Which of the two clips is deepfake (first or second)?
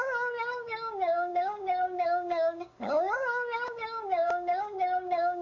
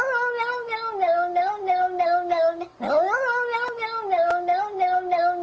first